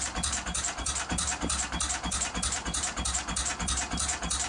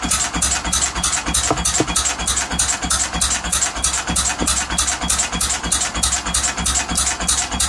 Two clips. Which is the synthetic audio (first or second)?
first